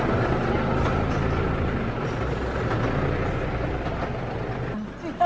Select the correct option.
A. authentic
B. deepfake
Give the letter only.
A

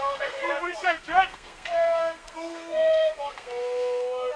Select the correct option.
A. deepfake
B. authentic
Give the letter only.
A